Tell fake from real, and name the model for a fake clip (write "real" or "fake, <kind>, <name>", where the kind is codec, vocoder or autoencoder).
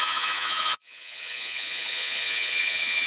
fake, vocoder, Vocos